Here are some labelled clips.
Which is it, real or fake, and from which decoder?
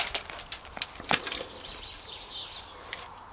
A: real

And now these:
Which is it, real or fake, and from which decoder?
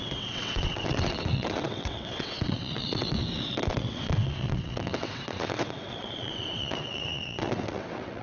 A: fake, vocoder, WaveNeXt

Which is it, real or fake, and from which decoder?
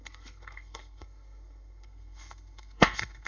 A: fake, codec, SNAC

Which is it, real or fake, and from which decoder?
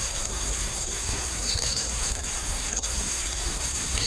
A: fake, codec, SNAC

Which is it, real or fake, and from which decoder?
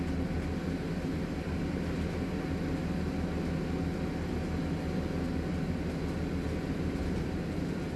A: real